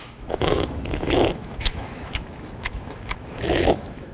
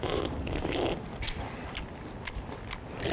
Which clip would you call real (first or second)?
second